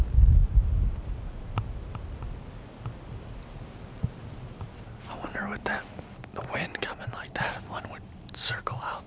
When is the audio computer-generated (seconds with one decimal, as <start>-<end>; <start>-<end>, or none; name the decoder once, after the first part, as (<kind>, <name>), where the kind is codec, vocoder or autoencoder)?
none